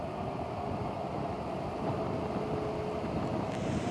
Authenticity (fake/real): real